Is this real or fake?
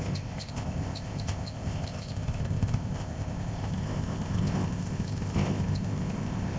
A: fake